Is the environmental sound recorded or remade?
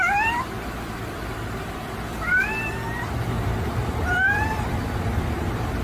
remade